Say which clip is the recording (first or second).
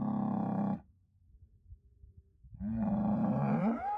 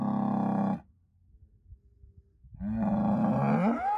second